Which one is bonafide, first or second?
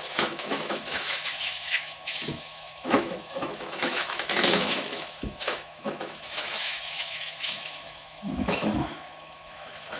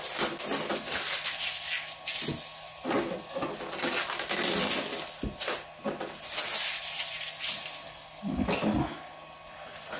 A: second